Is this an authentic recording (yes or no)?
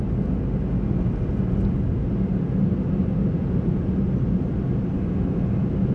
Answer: yes